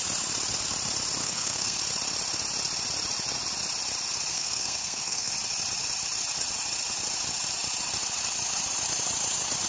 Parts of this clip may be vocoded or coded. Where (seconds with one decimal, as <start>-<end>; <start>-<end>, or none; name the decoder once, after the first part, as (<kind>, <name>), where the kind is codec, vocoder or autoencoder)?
1.2-1.8 (codec, SNAC); 4.3-5.3